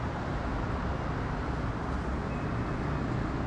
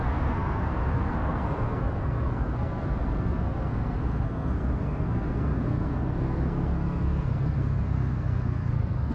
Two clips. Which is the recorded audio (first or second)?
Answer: first